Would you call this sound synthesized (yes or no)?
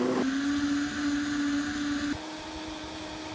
no